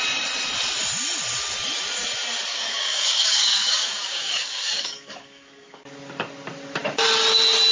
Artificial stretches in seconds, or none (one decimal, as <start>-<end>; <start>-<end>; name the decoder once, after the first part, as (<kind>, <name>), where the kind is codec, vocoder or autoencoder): 2.5-5.8 (codec, DAC)